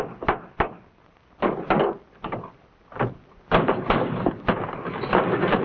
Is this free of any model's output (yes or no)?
no